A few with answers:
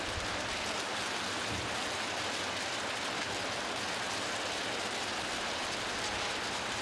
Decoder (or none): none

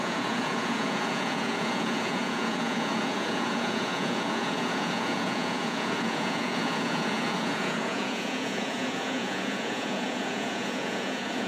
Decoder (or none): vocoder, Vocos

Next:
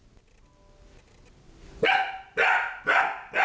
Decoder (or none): none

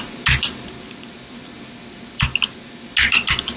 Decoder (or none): none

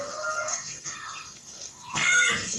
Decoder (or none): codec, SNAC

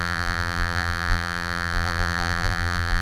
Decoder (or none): vocoder, BigVGAN v2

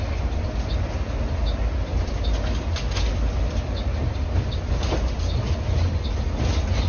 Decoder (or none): none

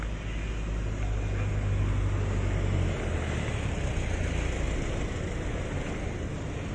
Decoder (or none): none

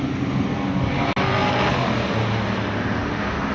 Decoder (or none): none